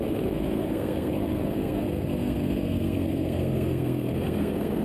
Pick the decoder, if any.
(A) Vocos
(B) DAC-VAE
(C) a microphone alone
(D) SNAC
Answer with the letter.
D